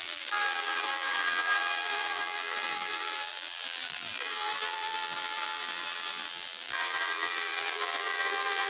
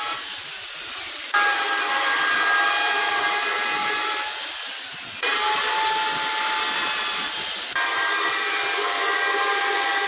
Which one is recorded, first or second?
second